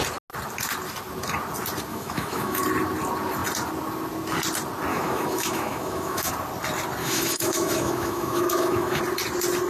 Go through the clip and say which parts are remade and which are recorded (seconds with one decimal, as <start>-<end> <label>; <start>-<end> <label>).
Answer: 0.0-1.9 recorded; 1.9-2.6 remade; 2.6-4.9 recorded; 4.9-6.3 remade; 6.3-7.0 recorded; 7.0-9.0 remade; 9.0-9.7 recorded

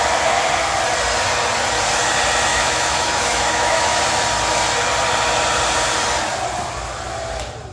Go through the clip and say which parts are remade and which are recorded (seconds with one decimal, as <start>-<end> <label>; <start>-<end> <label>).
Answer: 0.0-2.5 recorded; 2.5-4.0 remade; 4.0-7.7 recorded

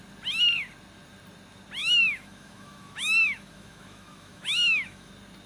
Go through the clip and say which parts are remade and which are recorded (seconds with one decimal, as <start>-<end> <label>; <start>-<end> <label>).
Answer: 0.0-1.8 recorded; 1.8-5.1 remade; 5.1-5.5 recorded

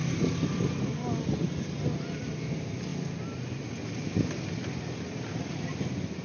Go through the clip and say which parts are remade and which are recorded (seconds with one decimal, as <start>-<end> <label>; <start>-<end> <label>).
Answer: 0.0-6.2 recorded

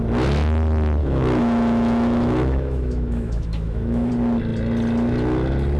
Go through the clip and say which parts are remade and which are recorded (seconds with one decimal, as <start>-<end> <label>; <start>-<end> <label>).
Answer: 0.0-1.0 recorded; 1.0-4.1 remade; 4.1-5.8 recorded

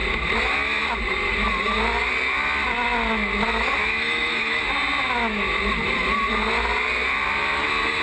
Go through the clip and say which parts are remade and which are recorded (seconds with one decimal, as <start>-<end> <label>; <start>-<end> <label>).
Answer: 0.0-3.8 recorded; 3.8-4.6 remade; 4.6-8.0 recorded

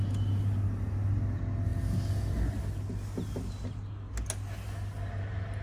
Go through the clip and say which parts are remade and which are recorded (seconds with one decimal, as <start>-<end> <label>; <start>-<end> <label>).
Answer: 0.0-5.6 recorded

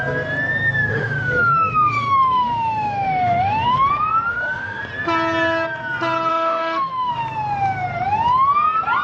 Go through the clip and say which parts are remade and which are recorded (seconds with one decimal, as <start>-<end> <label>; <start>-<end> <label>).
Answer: 0.0-0.9 recorded; 0.9-3.9 remade; 3.9-4.3 recorded; 4.3-4.8 remade; 4.8-6.3 recorded; 6.3-7.1 remade; 7.1-9.0 recorded